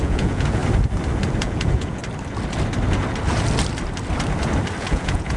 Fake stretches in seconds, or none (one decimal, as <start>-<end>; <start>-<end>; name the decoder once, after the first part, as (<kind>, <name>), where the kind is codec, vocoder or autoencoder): 0.0-0.6 (vocoder, Vocos); 1.4-2.0; 4.8-5.4